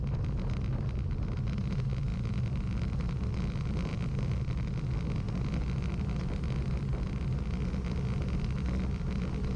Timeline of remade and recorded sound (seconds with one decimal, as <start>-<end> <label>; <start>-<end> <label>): 0.0-9.6 recorded